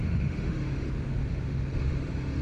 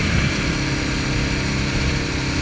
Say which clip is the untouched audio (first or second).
second